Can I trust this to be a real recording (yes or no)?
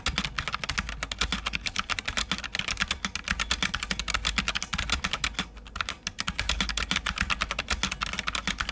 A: yes